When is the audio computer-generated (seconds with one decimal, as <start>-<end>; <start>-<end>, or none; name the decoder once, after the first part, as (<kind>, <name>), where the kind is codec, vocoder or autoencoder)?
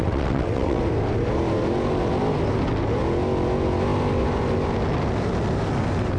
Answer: 0.0-0.8 (vocoder, WaveNeXt)